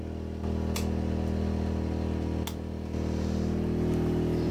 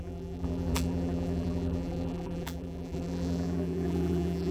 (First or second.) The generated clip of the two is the second